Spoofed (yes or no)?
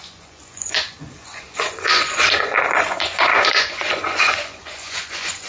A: yes